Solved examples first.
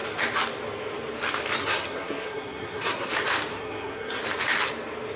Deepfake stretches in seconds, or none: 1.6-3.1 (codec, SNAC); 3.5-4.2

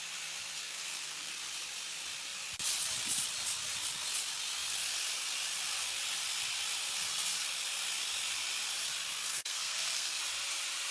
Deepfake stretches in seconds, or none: 0.6-1.3 (codec, SNAC); 9.3-10.2